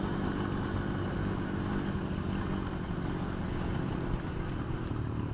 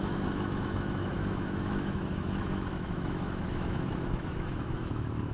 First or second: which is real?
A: first